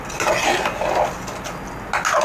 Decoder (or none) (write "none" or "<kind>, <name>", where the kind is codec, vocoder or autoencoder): none